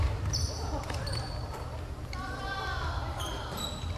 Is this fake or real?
real